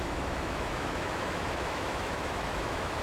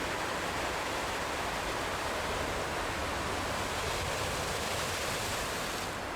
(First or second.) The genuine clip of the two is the second